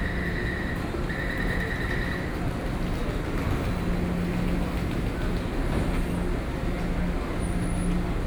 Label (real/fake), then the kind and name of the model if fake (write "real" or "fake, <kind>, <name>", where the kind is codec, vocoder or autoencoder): real